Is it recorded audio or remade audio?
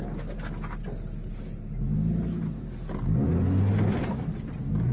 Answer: recorded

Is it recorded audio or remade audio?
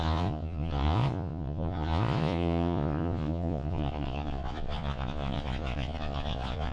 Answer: remade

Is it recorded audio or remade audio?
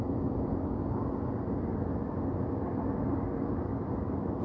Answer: recorded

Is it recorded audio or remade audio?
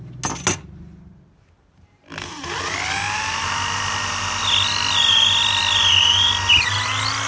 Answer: recorded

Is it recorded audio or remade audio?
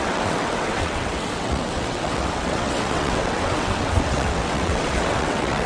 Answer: remade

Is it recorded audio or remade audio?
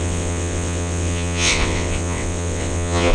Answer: remade